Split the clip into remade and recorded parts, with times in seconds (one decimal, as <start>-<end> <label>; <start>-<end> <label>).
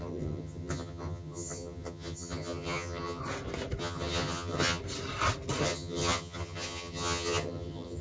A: 0.0-3.2 remade; 3.2-3.8 recorded; 3.8-4.8 remade; 4.8-5.6 recorded; 5.6-8.0 remade